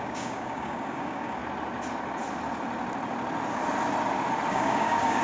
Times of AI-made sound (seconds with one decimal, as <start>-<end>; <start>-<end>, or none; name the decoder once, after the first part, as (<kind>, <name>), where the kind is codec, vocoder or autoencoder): 0.0-1.4 (codec, DAC); 4.5-5.2

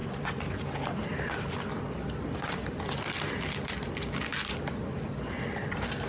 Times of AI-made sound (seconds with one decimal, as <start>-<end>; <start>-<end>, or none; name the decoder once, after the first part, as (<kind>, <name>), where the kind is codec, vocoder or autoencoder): none

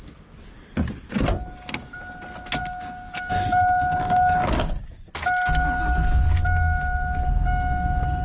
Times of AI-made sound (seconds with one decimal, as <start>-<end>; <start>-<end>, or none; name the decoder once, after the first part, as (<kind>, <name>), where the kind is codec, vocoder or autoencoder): 2.6-4.8 (codec, DAC)

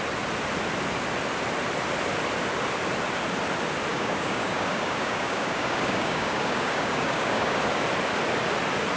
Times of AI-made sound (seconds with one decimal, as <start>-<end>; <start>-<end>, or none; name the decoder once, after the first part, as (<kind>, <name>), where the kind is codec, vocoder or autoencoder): 3.9-7.6 (codec, DAC)

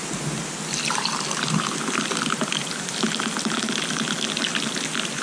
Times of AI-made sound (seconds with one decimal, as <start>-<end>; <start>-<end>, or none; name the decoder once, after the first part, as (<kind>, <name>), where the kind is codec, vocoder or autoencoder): none

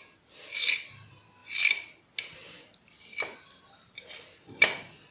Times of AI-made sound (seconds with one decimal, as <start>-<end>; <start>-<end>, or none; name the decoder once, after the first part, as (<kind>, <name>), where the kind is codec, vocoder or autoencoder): none

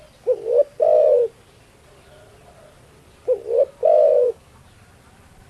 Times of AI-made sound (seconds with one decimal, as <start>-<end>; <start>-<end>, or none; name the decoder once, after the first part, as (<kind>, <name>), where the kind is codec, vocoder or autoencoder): 3.8-4.7 (codec, DAC)

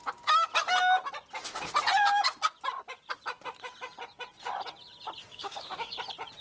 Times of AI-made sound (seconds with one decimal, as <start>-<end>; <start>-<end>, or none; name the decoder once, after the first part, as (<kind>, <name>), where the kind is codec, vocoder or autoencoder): 5.3-6.0 (codec, DAC)